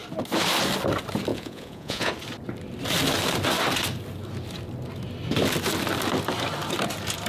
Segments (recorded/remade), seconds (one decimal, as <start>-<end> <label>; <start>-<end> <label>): 0.0-1.3 recorded; 1.3-2.1 remade; 2.1-7.3 recorded

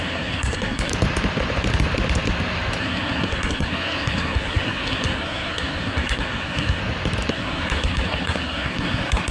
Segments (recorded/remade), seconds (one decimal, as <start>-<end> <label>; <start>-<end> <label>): 0.0-0.9 remade; 0.9-2.8 recorded; 2.8-6.8 remade; 6.8-7.3 recorded; 7.3-9.3 remade

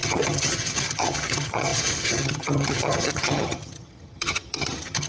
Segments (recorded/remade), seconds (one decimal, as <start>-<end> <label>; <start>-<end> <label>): 0.0-5.1 remade

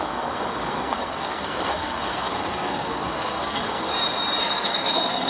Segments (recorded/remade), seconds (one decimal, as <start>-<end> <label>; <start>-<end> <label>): 0.0-3.9 remade; 3.9-4.4 recorded; 4.4-5.3 remade

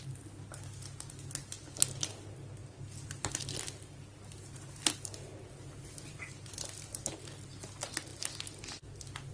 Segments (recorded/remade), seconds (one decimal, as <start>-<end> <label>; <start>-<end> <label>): 0.0-2.6 recorded; 2.6-3.4 remade; 3.4-8.1 recorded; 8.1-9.3 remade

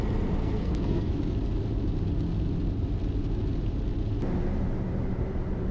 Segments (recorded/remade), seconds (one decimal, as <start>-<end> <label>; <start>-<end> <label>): 0.0-0.4 recorded; 0.4-1.1 remade; 1.1-5.7 recorded